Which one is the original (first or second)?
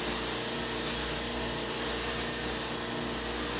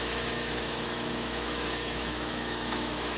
first